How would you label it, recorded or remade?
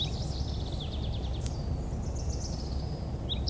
recorded